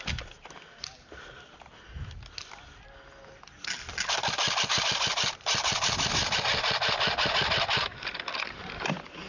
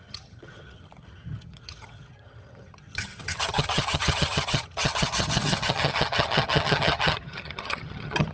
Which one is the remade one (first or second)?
second